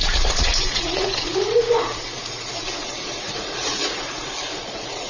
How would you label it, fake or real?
fake